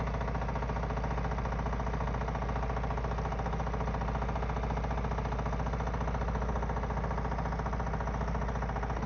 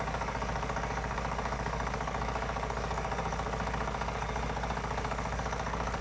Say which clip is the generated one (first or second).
second